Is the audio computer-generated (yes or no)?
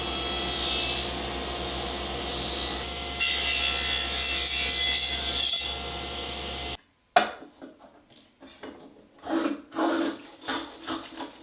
no